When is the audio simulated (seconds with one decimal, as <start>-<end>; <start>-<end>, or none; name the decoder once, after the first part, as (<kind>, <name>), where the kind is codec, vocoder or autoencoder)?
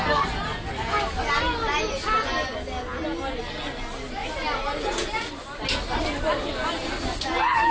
none